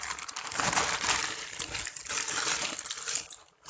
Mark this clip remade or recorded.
recorded